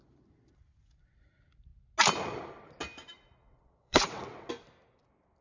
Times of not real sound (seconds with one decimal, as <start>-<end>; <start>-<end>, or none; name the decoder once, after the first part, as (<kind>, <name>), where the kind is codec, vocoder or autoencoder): 3.4-4.5 (vocoder, WaveNeXt)

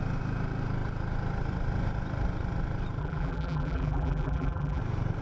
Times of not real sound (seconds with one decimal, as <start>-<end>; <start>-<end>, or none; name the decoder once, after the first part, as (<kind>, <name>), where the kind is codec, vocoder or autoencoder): 3.0-4.8 (vocoder, BigVGAN v2)

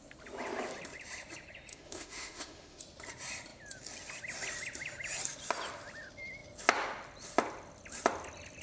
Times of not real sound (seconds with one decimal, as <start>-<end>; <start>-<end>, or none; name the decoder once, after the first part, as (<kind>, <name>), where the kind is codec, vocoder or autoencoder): 1.7-2.8 (autoencoder, DAC-VAE)

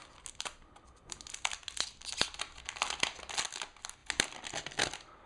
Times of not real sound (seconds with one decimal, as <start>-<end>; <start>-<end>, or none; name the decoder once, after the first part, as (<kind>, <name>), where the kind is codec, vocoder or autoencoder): none